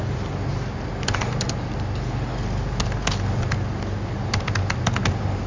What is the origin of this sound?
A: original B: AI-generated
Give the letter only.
A